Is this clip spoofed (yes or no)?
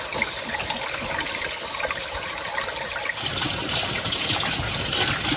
no